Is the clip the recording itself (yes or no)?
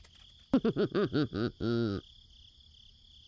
yes